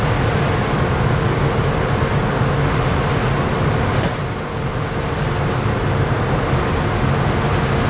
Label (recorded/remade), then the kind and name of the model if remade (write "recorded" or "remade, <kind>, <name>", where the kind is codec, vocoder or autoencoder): recorded